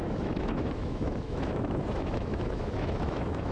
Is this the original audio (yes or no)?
no